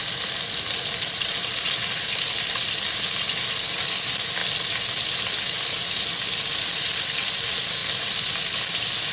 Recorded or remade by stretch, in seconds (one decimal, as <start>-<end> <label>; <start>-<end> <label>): 0.0-9.1 recorded